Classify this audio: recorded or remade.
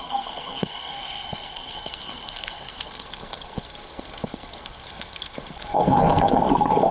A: remade